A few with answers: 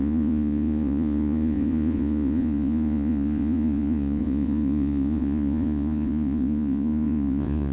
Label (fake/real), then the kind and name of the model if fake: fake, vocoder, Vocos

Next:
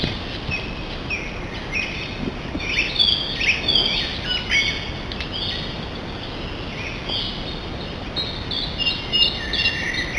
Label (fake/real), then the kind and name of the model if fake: real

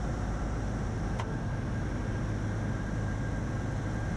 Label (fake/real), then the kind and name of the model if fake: real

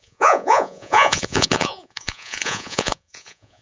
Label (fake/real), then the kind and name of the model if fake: fake, vocoder, Vocos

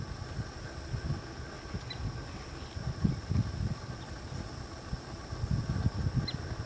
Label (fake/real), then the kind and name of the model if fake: real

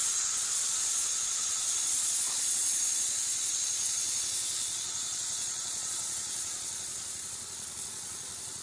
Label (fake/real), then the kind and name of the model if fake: fake, vocoder, Vocos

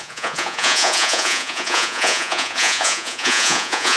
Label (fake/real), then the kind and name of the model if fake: fake, vocoder, Vocos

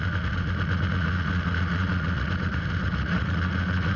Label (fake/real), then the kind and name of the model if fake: fake, vocoder, Vocos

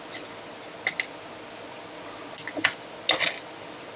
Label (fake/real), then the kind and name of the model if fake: real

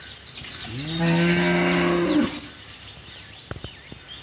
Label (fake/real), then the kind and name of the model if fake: real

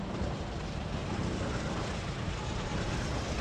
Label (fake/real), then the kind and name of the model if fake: real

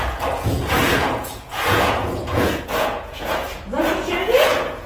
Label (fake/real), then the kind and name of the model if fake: fake, vocoder, Vocos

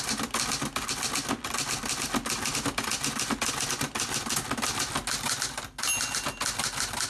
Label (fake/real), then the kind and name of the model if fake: real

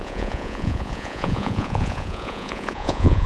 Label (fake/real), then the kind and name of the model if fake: fake, vocoder, Vocos